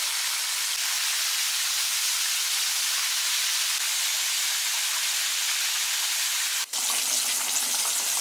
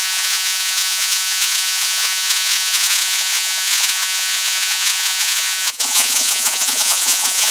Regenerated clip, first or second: second